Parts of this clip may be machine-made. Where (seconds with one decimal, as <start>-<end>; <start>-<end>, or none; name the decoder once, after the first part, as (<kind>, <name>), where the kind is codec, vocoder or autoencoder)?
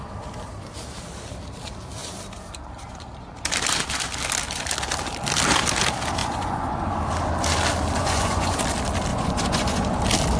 6.2-7.0 (vocoder, Vocos); 8.0-8.6; 9.1-10.0